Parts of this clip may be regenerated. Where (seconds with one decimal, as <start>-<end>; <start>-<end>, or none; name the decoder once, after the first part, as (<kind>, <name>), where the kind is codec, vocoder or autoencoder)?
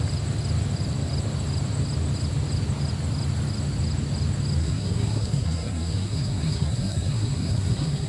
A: 4.6-8.1 (codec, SNAC)